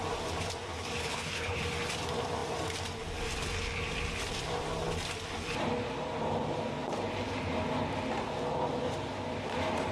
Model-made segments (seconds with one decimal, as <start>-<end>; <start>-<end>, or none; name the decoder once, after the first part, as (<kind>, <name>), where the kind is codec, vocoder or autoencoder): 1.0-1.6 (codec, HILCodec)